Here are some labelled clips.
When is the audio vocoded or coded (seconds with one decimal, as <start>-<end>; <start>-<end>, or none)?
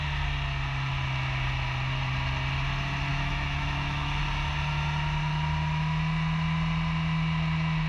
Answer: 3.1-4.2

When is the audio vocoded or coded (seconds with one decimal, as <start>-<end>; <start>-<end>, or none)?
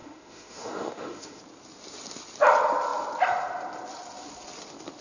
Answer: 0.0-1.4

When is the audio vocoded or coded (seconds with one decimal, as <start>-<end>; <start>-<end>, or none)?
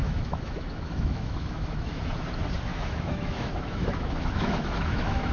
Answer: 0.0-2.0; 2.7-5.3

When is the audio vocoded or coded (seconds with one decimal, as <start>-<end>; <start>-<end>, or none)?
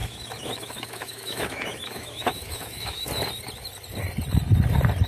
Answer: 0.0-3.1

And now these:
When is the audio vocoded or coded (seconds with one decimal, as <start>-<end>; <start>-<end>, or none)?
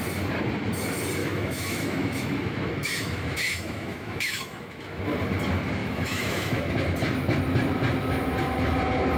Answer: 1.2-5.0; 5.8-6.7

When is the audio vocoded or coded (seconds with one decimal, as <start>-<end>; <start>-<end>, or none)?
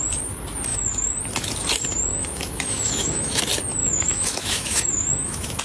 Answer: 0.7-1.2; 2.1-3.4; 3.8-5.6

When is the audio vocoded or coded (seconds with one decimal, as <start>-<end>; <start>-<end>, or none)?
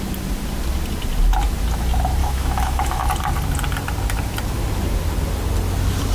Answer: 2.2-3.1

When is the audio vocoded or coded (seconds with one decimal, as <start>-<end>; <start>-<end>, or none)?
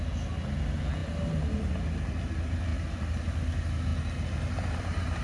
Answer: none